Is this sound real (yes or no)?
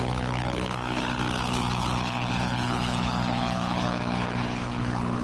no